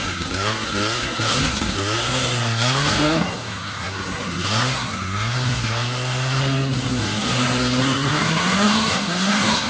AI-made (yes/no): yes